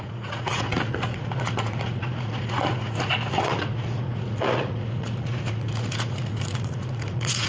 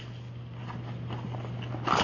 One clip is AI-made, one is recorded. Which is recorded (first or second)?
second